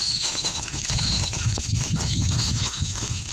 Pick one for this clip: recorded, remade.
remade